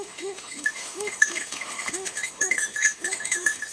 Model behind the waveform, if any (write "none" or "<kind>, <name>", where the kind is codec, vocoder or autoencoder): autoencoder, DAC-VAE